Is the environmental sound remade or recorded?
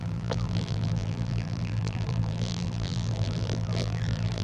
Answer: remade